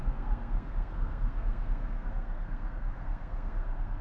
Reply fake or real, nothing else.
fake